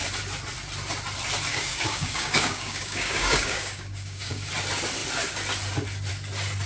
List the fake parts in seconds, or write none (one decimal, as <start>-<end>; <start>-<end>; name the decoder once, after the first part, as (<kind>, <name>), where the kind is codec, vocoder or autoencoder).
1.5-4.5 (codec, DAC)